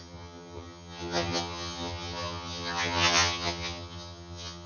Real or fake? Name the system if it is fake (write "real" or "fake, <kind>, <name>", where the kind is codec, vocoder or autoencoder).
fake, vocoder, HiFi-GAN